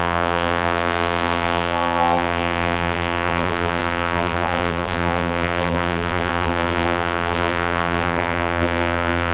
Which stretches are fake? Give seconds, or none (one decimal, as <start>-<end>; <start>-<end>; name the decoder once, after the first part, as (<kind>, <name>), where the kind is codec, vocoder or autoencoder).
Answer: 0.0-9.3 (vocoder, BigVGAN v2)